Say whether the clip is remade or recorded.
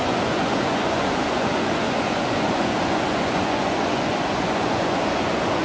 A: remade